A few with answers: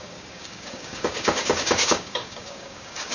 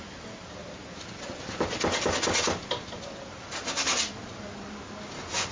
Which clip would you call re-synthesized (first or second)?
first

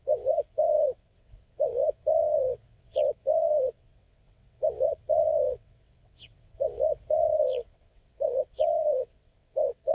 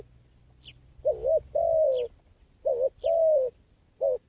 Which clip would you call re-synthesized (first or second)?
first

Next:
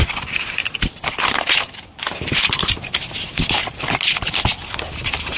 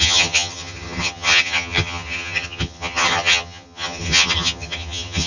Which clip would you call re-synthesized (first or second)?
second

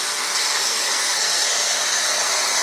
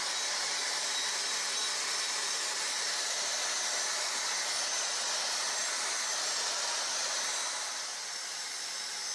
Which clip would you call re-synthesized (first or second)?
first